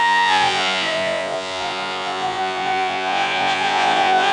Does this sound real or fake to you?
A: fake